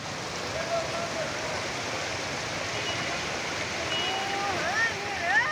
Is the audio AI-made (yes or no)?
no